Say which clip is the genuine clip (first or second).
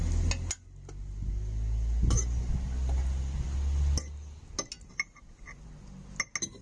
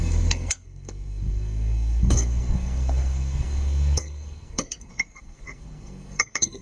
first